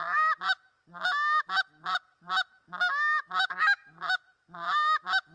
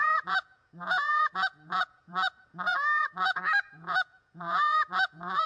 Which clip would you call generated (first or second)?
second